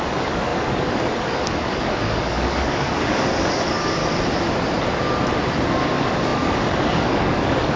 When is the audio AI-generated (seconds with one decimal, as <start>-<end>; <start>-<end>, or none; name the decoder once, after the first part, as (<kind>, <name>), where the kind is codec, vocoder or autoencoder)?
0.0-4.0 (codec, DAC); 5.7-7.8